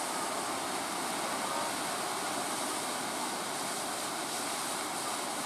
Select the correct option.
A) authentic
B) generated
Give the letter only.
A